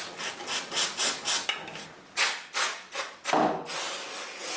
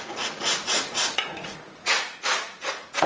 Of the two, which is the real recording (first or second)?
first